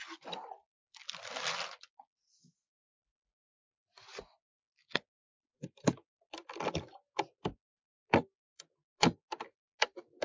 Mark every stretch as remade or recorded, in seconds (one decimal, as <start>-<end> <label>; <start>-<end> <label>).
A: 0.0-10.2 recorded